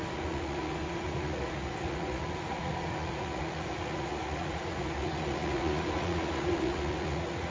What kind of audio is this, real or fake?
fake